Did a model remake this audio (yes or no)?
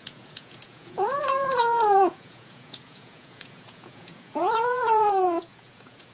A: yes